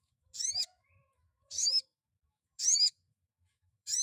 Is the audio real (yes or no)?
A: no